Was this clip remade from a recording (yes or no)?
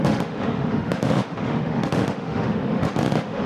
yes